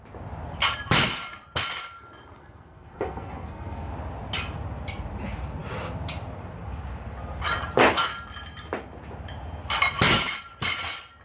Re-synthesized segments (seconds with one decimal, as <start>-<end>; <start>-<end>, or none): 2.4-3.9